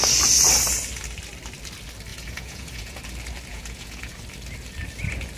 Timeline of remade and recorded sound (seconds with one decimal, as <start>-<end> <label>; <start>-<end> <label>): 0.0-2.1 recorded; 2.1-3.0 remade; 3.0-3.5 recorded; 3.5-4.2 remade; 4.2-5.4 recorded